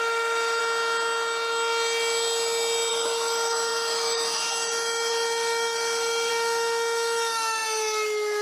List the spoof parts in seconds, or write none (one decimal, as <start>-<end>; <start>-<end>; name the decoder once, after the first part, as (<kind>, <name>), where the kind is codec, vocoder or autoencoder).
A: 0.0-0.6 (autoencoder, DAC-VAE); 2.9-8.4